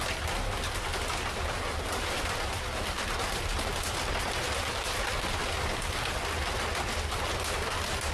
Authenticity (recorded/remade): recorded